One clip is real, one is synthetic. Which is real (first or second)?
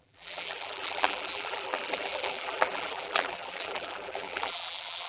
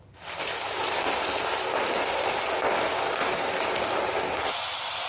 second